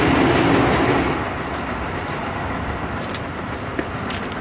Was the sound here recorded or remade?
recorded